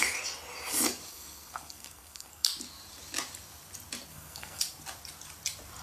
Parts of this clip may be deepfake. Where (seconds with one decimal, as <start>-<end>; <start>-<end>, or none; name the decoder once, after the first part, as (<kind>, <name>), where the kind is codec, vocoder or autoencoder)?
1.1-2.5 (codec, SNAC); 4.1-4.6